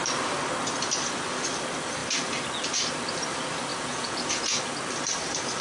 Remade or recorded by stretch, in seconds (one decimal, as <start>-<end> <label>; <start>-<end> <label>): 0.0-3.7 recorded; 3.7-4.6 remade; 4.6-5.6 recorded